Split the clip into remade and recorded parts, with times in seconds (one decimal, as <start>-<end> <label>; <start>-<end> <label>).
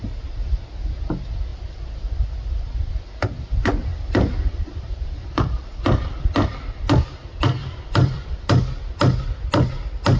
0.0-1.5 recorded; 1.5-2.9 remade; 2.9-3.9 recorded; 3.9-6.3 remade; 6.3-7.6 recorded; 7.6-8.5 remade; 8.5-10.2 recorded